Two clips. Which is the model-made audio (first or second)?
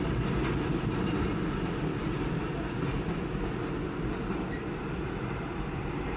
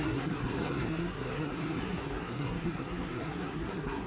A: second